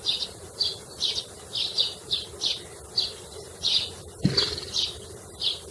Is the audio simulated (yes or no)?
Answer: no